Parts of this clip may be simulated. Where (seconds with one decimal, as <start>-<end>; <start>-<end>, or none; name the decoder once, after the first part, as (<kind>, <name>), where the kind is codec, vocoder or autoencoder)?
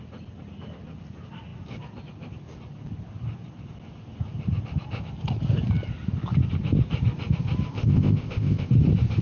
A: 7.7-8.7 (codec, ZipCodec)